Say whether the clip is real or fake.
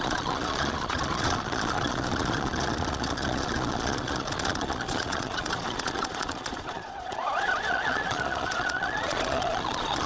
fake